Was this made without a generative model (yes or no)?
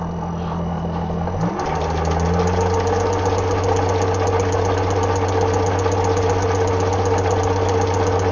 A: yes